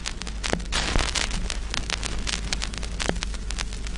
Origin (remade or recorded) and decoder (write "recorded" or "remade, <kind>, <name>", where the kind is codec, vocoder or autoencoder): recorded